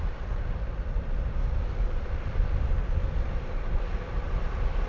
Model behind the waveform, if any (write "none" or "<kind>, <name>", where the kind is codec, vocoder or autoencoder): vocoder, BigVGAN v2